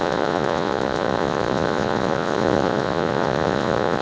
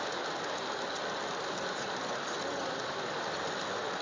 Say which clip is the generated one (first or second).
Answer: first